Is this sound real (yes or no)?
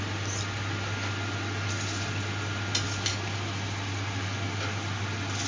yes